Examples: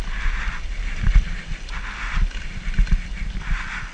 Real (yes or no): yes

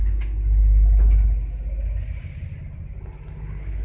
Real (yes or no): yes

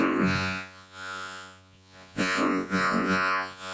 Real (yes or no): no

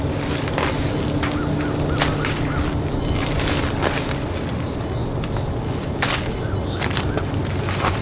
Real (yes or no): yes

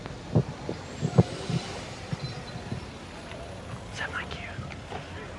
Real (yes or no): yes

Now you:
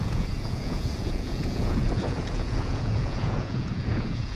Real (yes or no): no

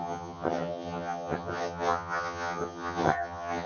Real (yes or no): no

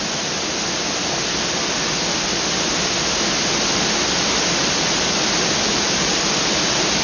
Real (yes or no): yes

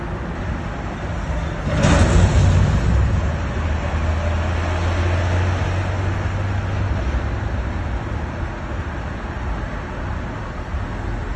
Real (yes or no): yes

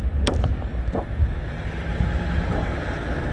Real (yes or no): yes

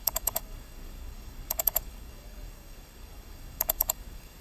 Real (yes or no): no